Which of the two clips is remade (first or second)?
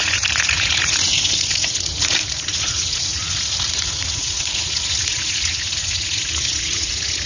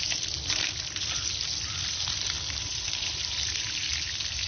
first